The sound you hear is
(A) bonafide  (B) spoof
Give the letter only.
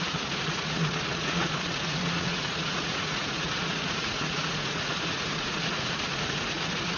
B